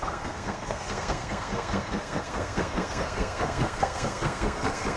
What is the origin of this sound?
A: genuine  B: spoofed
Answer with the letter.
B